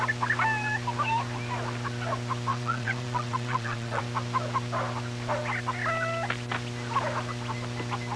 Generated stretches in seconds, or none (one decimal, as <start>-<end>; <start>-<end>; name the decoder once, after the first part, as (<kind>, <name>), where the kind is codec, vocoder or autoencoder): 2.5-4.0 (vocoder, WaveNeXt)